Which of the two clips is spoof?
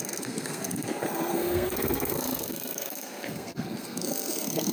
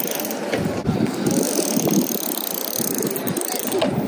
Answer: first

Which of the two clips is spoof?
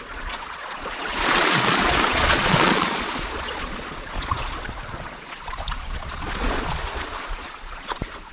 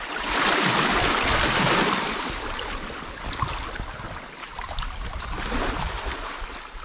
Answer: first